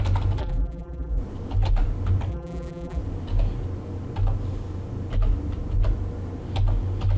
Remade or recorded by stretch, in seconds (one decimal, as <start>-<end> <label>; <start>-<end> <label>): 0.0-0.4 recorded; 0.4-1.2 remade; 1.2-2.3 recorded; 2.3-3.0 remade; 3.0-7.2 recorded